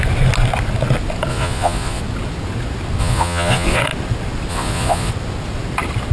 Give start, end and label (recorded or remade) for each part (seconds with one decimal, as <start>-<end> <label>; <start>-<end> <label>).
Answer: 0.0-1.3 recorded; 1.3-2.0 remade; 2.0-3.0 recorded; 3.0-3.8 remade; 3.8-4.5 recorded; 4.5-5.1 remade; 5.1-6.1 recorded

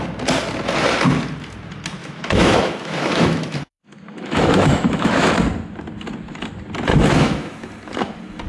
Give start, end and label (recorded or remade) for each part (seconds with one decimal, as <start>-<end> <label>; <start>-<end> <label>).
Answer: 0.0-2.0 recorded; 2.0-5.3 remade; 5.3-6.9 recorded; 6.9-7.6 remade; 7.6-8.5 recorded